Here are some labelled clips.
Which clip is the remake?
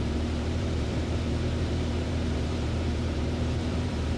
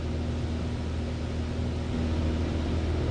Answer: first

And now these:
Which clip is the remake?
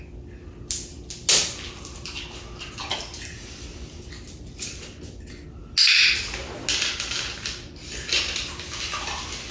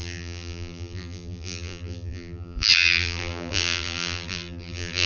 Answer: second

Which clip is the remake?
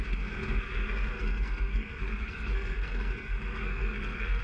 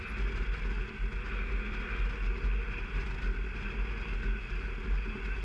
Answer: first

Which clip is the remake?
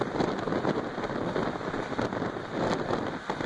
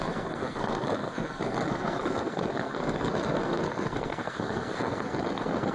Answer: second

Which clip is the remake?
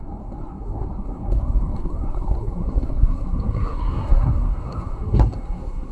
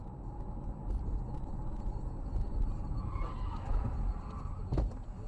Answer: first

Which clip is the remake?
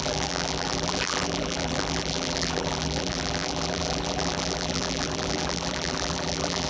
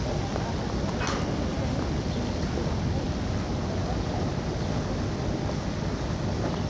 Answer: first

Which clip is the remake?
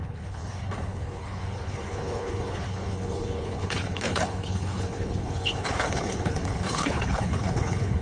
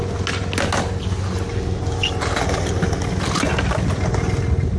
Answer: first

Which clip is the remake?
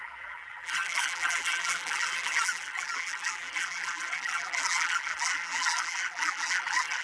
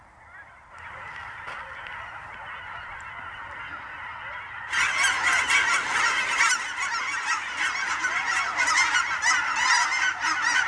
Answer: first